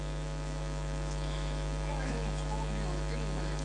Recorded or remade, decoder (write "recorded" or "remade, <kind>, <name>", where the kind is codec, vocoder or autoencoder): remade, autoencoder, DAC-VAE